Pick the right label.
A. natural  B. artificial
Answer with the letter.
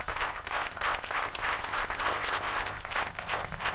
B